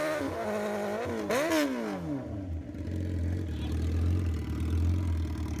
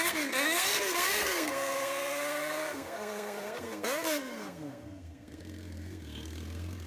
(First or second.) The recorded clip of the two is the first